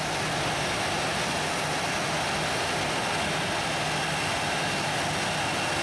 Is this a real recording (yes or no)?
yes